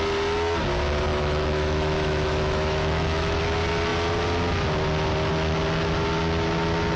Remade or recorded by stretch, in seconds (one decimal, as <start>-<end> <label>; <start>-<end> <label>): 0.0-1.1 recorded; 1.1-3.4 remade; 3.4-7.0 recorded